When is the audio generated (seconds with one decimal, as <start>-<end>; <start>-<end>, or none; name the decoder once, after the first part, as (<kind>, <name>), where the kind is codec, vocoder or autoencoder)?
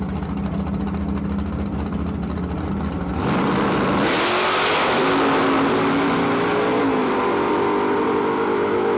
none